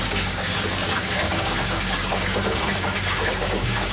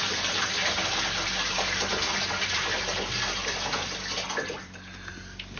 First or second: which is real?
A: second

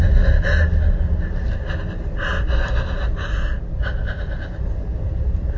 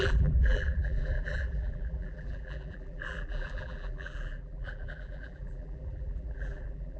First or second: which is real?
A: first